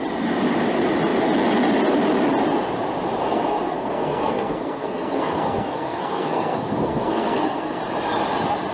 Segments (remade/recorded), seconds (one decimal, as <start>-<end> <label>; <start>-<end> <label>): 0.0-3.2 recorded; 3.2-7.8 remade; 7.8-8.7 recorded